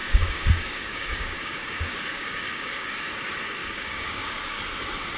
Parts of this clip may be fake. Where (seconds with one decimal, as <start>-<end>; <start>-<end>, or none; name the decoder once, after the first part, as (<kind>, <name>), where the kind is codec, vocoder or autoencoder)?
0.0-3.1 (codec, DAC); 3.6-4.6